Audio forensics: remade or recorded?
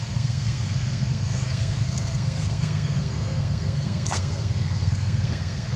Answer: remade